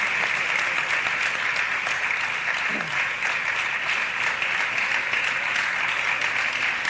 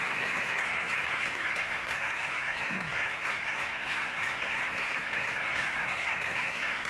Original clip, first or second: first